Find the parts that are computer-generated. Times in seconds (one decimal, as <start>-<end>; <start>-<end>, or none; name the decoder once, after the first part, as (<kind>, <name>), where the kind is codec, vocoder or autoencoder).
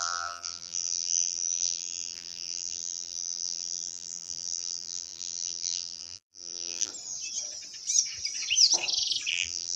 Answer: 0.0-6.9 (vocoder, BigVGAN v2); 9.3-9.8